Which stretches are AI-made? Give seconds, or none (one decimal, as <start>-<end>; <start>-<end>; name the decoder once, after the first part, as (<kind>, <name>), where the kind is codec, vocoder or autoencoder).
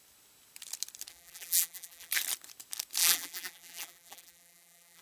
1.1-2.1 (vocoder, BigVGAN v2); 3.0-5.0